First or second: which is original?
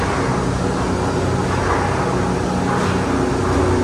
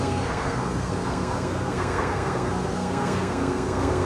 first